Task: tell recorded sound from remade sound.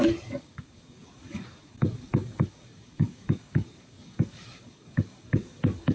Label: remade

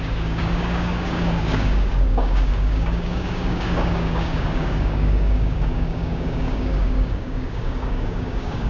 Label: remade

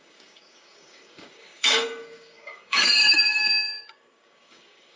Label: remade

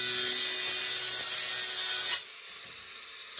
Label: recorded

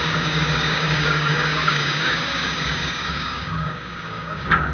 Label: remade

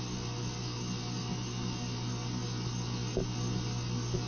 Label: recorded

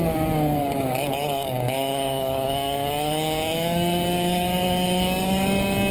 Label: remade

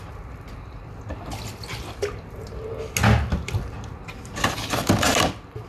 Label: recorded